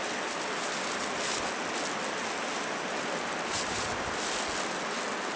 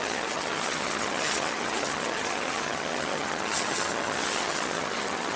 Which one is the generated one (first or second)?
second